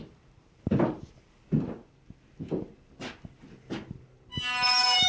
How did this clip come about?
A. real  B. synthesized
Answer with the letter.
A